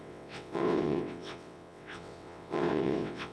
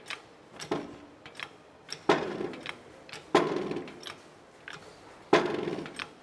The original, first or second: second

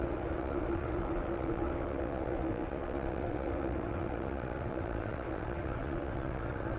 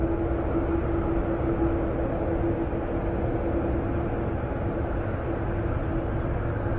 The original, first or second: second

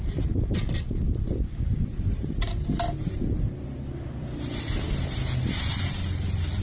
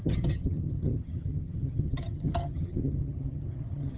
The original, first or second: first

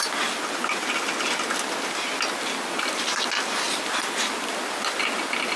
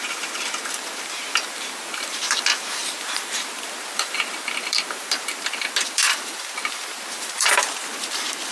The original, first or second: first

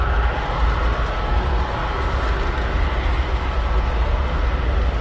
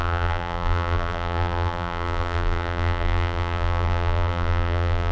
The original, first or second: first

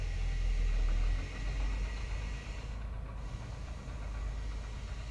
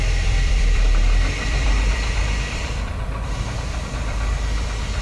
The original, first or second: first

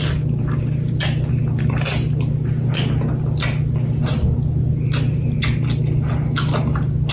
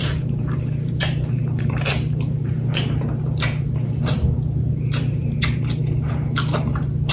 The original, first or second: first